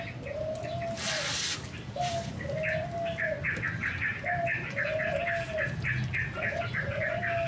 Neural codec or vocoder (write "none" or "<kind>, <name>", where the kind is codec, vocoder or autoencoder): none